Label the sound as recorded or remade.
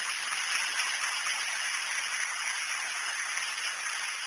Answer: recorded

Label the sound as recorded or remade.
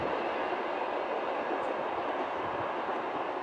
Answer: recorded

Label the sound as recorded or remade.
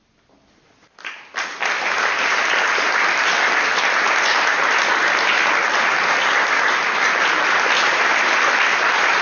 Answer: recorded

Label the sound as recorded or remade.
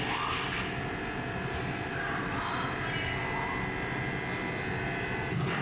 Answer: recorded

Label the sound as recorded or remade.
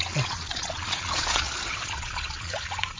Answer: remade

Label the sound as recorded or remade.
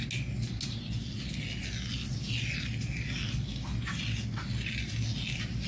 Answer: recorded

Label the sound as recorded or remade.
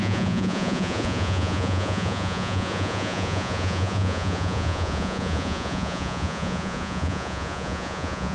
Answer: remade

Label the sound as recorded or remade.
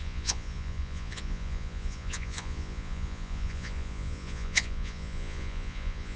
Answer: remade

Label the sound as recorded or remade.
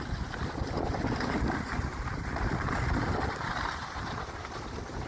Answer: recorded